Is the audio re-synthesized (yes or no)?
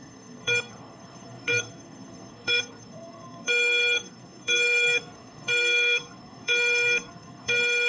yes